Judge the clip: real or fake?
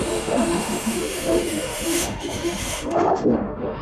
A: fake